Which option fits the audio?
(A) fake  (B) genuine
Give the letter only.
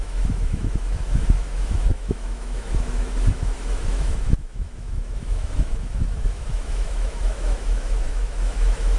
A